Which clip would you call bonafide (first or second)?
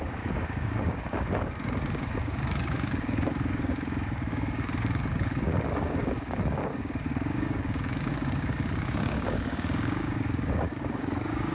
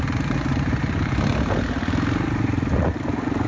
second